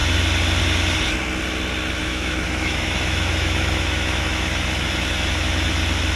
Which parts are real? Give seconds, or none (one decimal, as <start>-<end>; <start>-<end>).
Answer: 0.0-2.0; 5.7-6.2